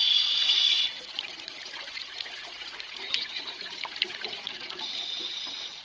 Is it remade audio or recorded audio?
remade